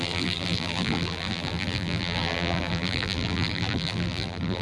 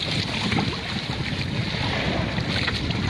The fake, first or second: first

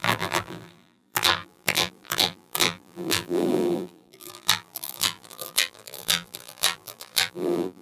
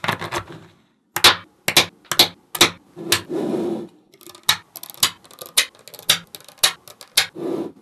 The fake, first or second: first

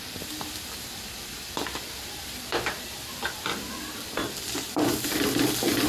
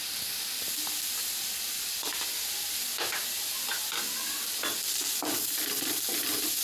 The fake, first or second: first